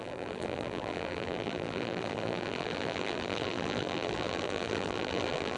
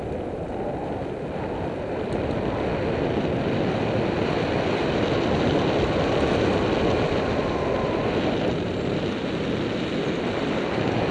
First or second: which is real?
second